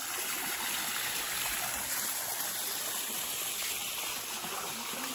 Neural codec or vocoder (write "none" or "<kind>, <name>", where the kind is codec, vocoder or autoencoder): none